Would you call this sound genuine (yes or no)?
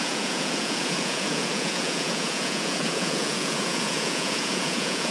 no